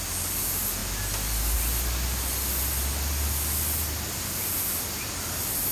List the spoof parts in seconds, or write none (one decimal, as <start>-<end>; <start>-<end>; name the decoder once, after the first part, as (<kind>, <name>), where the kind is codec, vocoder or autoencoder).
none